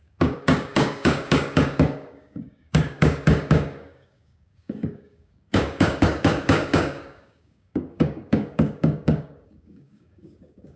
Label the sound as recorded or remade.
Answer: remade